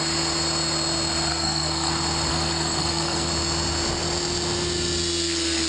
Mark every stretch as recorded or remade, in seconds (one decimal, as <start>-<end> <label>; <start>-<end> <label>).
0.0-1.3 recorded; 1.3-1.9 remade; 1.9-2.3 recorded; 2.3-3.3 remade; 3.3-5.7 recorded